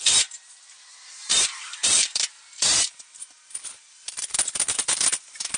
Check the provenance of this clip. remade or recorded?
remade